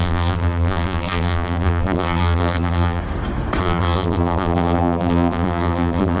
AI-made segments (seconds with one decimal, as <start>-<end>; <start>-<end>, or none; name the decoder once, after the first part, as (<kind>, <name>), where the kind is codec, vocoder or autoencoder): 0.0-3.0 (vocoder, BigVGAN v2); 3.6-6.2